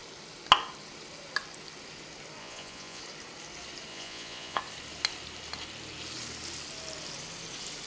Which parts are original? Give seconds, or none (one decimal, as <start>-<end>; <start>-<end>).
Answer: 0.0-2.4; 3.0-3.9; 4.6-7.9